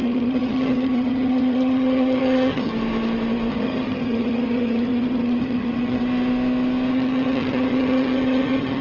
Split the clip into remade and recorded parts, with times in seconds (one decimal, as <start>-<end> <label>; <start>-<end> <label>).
0.0-2.7 remade; 2.7-3.5 recorded; 3.5-6.0 remade; 6.0-6.9 recorded; 6.9-8.8 remade

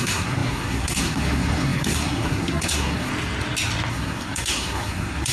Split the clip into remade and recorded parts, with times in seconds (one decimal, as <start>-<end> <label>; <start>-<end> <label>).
0.0-3.1 remade; 3.1-3.9 recorded; 3.9-5.3 remade

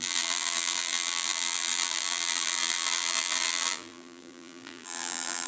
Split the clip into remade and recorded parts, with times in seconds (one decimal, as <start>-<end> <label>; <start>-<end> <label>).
0.0-5.5 remade

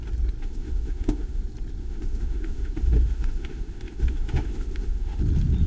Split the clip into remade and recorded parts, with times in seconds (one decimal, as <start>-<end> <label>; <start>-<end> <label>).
0.0-0.4 recorded; 0.4-1.4 remade; 1.4-1.8 recorded; 1.8-5.2 remade; 5.2-5.7 recorded

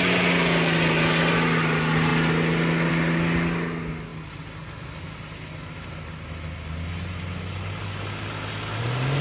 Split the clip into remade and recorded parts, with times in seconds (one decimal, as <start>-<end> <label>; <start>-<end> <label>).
0.0-9.2 recorded

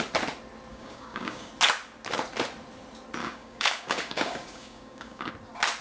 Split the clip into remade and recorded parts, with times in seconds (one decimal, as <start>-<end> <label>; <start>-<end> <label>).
0.0-0.7 recorded; 0.7-1.5 remade; 1.5-3.2 recorded; 3.2-5.3 remade; 5.3-5.8 recorded

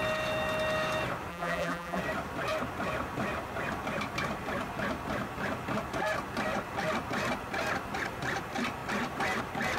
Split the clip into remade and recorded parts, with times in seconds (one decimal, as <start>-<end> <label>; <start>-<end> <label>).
0.0-1.3 recorded; 1.3-2.0 remade; 2.0-9.8 recorded